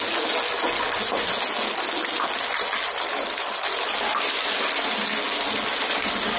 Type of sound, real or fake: real